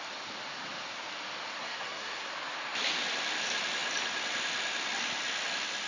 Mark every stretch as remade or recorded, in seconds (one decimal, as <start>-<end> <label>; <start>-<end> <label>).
0.0-1.6 recorded; 1.6-2.3 remade; 2.3-5.9 recorded